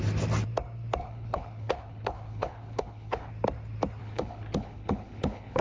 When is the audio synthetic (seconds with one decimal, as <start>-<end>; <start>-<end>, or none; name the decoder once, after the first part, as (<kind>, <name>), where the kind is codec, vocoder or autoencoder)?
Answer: 1.0-3.3 (codec, HILCodec); 4.0-5.6